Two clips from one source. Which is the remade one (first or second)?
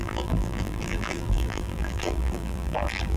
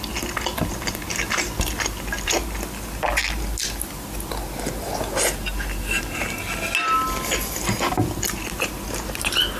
first